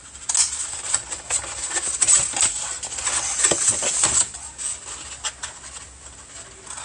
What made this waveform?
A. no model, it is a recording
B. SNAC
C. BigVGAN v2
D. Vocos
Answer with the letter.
A